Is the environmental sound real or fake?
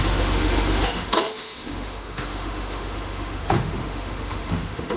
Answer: fake